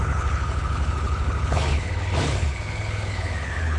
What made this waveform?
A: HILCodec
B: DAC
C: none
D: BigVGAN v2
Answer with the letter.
A